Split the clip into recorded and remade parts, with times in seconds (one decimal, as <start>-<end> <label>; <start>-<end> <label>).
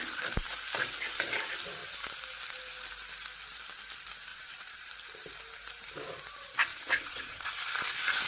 0.0-4.3 recorded; 4.3-4.9 remade; 4.9-6.7 recorded; 6.7-7.5 remade; 7.5-8.3 recorded